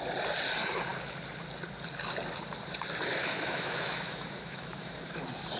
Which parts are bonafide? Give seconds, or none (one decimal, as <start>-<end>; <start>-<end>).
0.0-3.1; 5.1-5.6